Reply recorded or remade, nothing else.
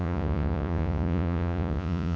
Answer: remade